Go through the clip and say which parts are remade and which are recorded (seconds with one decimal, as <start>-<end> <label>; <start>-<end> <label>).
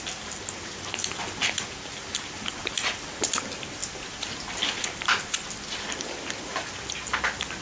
0.0-7.6 recorded